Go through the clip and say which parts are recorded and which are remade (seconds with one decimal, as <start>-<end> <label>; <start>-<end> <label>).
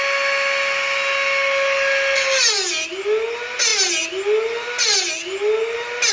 0.0-6.1 recorded